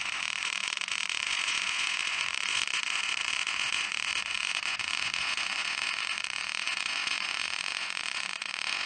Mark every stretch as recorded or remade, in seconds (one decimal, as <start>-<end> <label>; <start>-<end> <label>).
0.0-8.9 remade